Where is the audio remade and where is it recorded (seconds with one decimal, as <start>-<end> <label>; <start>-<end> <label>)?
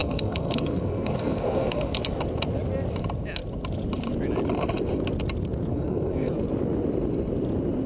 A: 0.0-2.0 remade; 2.0-5.7 recorded; 5.7-6.3 remade; 6.3-7.9 recorded